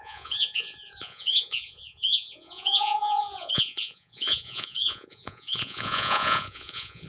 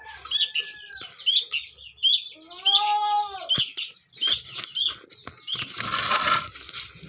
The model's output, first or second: first